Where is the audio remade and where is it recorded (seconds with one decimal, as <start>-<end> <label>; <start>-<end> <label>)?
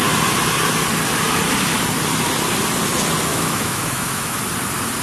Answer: 0.0-3.3 recorded; 3.3-4.4 remade; 4.4-5.0 recorded